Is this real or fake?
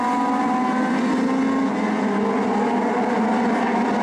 real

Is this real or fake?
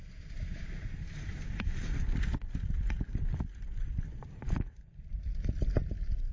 fake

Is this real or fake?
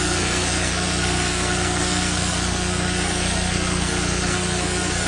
fake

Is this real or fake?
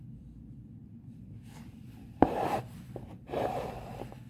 fake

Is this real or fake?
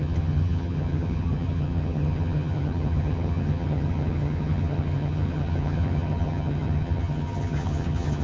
fake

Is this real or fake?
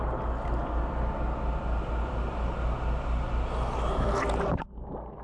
real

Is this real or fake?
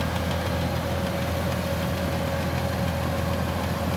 real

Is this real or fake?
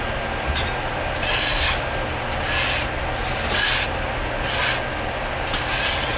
real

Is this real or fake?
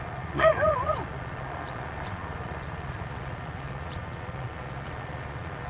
fake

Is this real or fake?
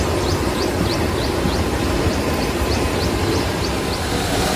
real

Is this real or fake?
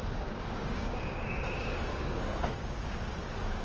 fake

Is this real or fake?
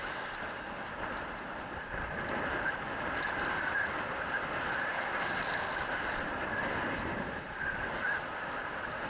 real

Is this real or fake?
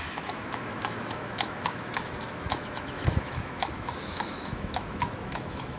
fake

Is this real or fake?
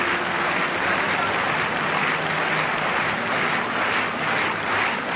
real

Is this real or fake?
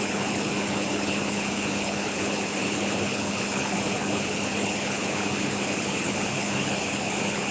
fake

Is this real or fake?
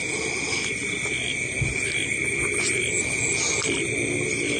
real